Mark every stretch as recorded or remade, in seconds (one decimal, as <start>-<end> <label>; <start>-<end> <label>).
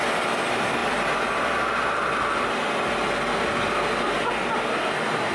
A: 0.0-5.3 recorded